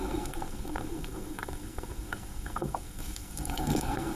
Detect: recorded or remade remade